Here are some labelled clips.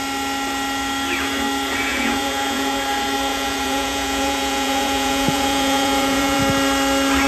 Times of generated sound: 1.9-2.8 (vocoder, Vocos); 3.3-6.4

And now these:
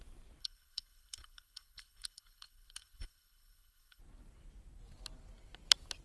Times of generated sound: 0.4-4.0 (codec, HILCodec)

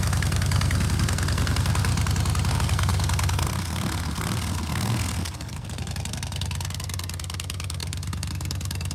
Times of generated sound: 0.0-1.9 (codec, SNAC); 2.5-8.9

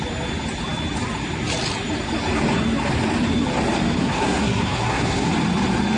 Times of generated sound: 4.0-5.3 (codec, SNAC)

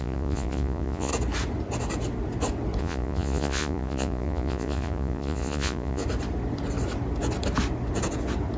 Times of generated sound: 0.0-1.1 (vocoder, Vocos); 2.8-6.0

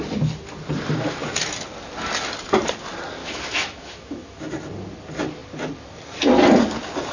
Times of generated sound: 3.2-4.4 (autoencoder, DAC-VAE)

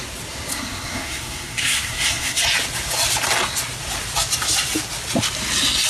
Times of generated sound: 0.5-2.4 (codec, SNAC)

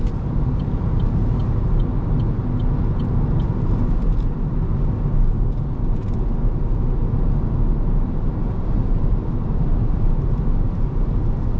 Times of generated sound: 8.4-10.1 (vocoder, BigVGAN v2)